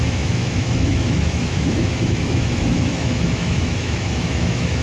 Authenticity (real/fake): fake